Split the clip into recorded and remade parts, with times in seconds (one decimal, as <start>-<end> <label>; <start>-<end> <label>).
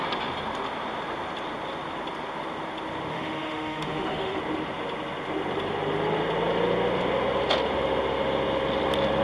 0.0-3.1 recorded; 3.1-4.4 remade; 4.4-9.2 recorded